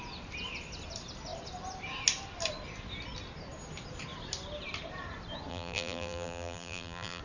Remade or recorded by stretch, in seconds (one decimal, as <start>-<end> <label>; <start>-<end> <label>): 0.0-5.5 recorded; 5.5-7.2 remade